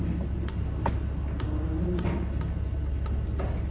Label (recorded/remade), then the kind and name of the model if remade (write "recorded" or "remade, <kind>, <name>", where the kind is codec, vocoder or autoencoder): recorded